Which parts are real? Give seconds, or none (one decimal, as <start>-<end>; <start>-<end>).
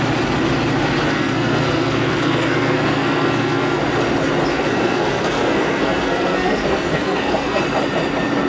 0.0-1.1; 3.8-4.5; 7.6-8.5